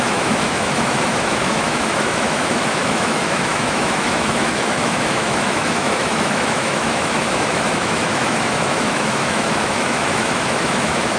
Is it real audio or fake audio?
fake